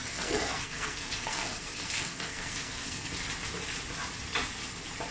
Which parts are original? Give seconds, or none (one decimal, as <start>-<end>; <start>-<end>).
3.1-5.1